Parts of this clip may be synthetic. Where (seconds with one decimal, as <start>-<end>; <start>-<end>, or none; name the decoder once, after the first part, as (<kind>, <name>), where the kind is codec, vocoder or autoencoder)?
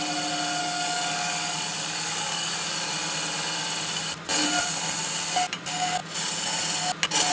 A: 0.6-2.9 (codec, DAC)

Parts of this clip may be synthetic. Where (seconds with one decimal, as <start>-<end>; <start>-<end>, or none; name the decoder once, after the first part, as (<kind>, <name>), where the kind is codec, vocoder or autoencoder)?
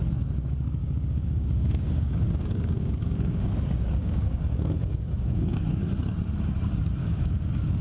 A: 0.8-3.5 (codec, DAC); 4.0-5.8; 7.0-7.8